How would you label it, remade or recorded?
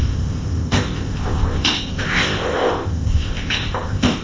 remade